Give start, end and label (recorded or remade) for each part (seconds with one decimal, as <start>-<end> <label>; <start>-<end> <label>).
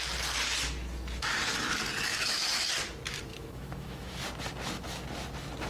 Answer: 0.0-2.1 recorded; 2.1-2.7 remade; 2.7-3.3 recorded; 3.3-4.2 remade; 4.2-5.7 recorded